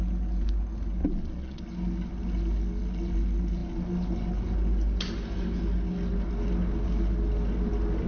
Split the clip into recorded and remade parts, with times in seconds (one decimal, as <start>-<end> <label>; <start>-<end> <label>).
0.0-1.0 recorded; 1.0-1.6 remade; 1.6-8.1 recorded